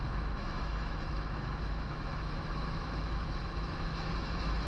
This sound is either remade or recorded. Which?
remade